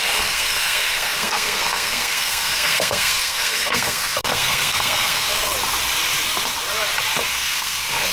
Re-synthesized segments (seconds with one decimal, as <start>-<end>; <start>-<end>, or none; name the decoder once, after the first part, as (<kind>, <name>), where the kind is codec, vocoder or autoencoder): 0.0-5.5 (codec, SNAC); 7.3-8.1

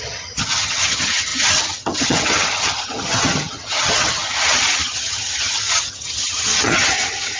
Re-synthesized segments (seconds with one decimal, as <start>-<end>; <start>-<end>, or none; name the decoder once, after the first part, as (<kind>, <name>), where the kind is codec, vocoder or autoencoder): 0.0-7.4 (vocoder, HiFi-GAN)

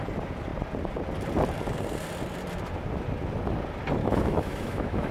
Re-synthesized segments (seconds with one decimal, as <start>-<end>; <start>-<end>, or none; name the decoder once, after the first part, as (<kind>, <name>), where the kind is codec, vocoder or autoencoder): 4.0-5.1 (autoencoder, DAC-VAE)

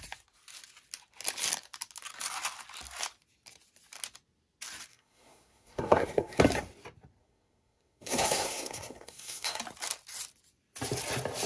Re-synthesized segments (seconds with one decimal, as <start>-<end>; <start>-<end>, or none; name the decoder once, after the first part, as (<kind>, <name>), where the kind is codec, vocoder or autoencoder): 4.9-6.4 (codec, SNAC); 7.2-9.6

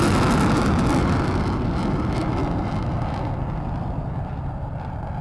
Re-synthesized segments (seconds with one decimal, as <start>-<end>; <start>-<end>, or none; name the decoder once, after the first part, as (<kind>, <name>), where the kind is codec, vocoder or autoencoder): none